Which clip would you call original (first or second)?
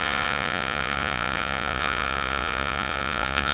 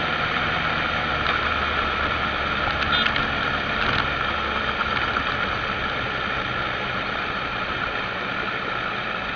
second